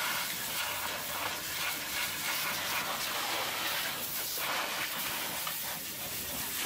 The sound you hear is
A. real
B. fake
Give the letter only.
A